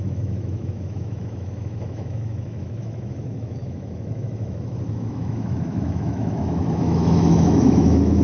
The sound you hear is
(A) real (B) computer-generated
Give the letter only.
B